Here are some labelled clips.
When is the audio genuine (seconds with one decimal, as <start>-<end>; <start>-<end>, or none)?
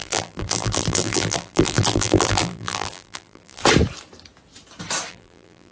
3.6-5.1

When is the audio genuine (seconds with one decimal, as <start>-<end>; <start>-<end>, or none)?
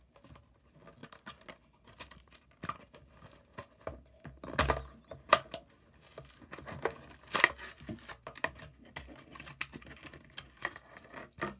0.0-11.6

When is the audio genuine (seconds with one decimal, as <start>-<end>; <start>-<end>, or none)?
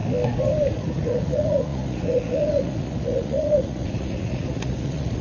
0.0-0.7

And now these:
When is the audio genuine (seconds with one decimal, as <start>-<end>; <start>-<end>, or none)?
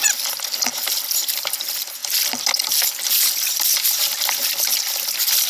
0.0-5.5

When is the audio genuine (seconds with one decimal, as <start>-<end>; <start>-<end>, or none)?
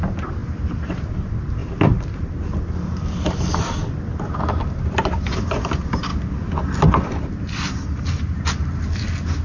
0.0-1.6; 2.2-3.8; 5.4-9.4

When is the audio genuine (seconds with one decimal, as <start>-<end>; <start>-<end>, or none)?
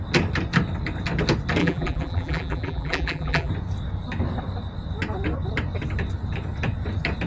0.0-1.6; 3.5-7.3